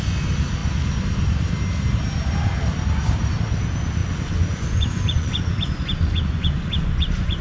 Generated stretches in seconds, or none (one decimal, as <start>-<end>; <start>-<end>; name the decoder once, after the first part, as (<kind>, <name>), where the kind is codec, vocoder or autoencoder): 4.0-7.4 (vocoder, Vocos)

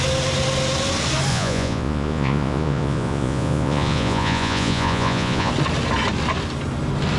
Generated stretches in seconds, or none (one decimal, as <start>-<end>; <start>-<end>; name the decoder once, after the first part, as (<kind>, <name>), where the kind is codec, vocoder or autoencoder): 1.3-5.5 (vocoder, Vocos)

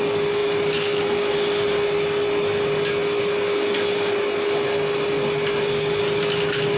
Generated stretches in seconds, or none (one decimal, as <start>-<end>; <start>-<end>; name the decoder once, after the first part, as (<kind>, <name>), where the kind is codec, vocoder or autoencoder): none

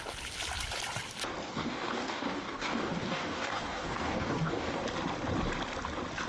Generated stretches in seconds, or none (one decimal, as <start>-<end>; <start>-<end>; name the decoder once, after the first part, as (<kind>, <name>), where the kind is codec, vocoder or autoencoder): 1.4-4.8 (codec, DAC)

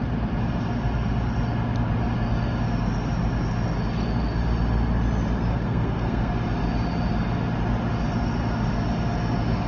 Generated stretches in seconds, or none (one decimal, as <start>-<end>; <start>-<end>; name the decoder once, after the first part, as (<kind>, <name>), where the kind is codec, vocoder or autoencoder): 5.5-6.3 (codec, SNAC)

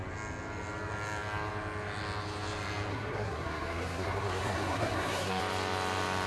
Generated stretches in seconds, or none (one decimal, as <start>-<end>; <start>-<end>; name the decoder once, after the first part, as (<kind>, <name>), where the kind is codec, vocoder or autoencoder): 2.9-5.4 (codec, SNAC)